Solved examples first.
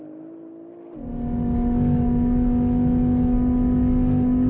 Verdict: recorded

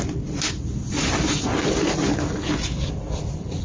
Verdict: recorded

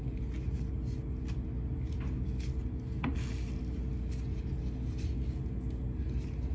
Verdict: recorded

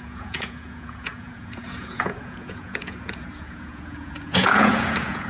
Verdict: remade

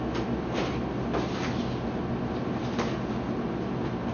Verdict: recorded